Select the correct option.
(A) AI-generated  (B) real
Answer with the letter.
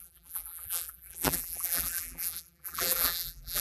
A